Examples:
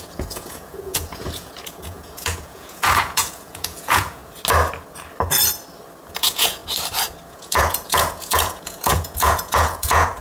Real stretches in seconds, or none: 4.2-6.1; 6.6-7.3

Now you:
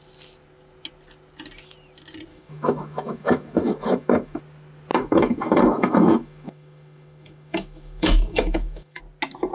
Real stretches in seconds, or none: 0.0-2.3; 4.4-4.9; 9.0-9.5

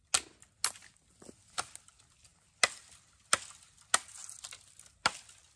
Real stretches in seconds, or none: 0.0-5.6

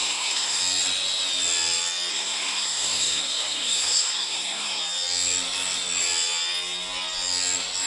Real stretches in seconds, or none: 0.6-2.1; 4.8-7.9

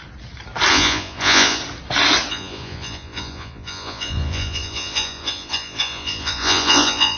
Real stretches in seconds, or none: 0.0-0.7; 1.6-2.3

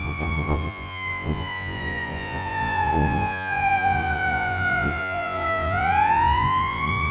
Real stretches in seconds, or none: none

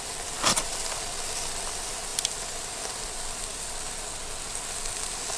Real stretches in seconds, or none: 0.0-2.1; 3.1-5.4